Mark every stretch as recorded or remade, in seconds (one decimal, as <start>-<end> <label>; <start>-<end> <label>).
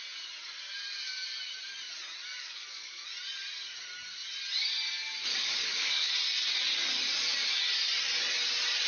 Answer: 0.0-2.3 recorded; 2.3-3.0 remade; 3.0-5.3 recorded; 5.3-6.1 remade; 6.1-8.9 recorded